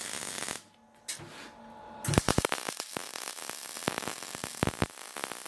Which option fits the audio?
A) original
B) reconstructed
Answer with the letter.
A